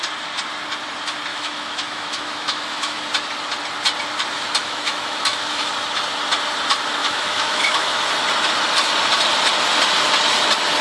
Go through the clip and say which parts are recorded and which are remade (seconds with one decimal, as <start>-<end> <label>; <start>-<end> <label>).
0.0-1.3 recorded; 1.3-3.0 remade; 3.0-4.6 recorded; 4.6-5.7 remade; 5.7-7.0 recorded; 7.0-8.0 remade; 8.0-10.8 recorded